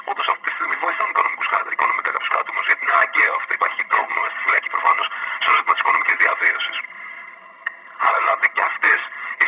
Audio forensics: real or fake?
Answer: fake